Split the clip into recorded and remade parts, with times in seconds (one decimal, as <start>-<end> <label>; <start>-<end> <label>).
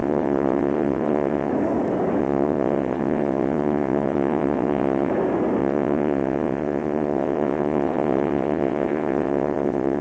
0.0-1.5 remade; 1.5-2.2 recorded; 2.2-5.1 remade; 5.1-5.6 recorded; 5.6-10.0 remade